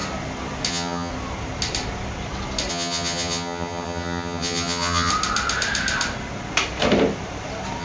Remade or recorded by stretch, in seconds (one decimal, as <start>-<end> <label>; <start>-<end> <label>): 0.0-0.7 recorded; 0.7-1.1 remade; 1.1-2.7 recorded; 2.7-5.1 remade; 5.1-7.8 recorded